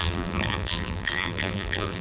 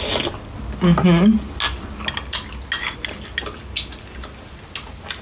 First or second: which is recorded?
second